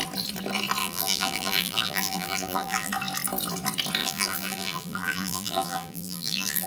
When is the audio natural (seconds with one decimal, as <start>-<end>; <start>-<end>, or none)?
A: 0.0-0.8; 2.9-4.0